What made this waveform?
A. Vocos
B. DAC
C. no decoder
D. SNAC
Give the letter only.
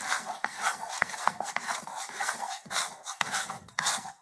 D